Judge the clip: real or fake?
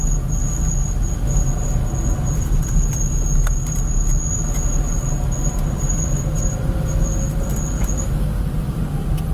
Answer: real